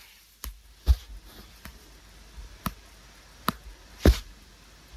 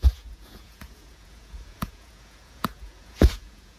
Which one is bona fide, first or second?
first